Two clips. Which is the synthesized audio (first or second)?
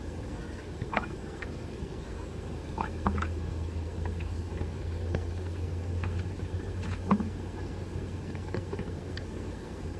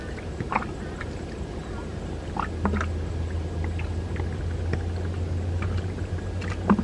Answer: first